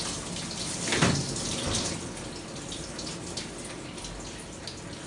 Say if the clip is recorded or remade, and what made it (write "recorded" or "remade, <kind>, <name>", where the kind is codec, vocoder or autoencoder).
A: recorded